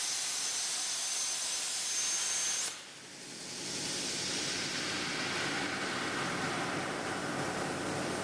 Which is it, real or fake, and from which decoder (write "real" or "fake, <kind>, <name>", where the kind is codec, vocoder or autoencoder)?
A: real